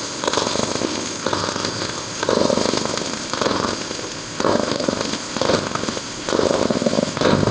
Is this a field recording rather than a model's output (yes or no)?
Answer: no